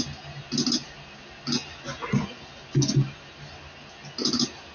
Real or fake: real